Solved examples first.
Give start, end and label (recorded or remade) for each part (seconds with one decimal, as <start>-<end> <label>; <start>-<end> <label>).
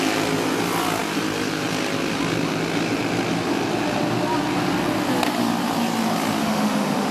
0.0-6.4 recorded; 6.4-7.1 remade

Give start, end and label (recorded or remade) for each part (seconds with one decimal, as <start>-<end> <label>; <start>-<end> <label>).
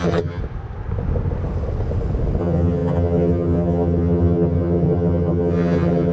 0.0-0.4 remade; 0.4-2.4 recorded; 2.4-6.1 remade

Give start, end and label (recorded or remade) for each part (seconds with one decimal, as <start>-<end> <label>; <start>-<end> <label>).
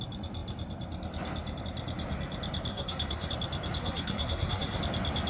0.0-2.7 recorded; 2.7-3.3 remade; 3.3-3.8 recorded; 3.8-4.8 remade; 4.8-5.3 recorded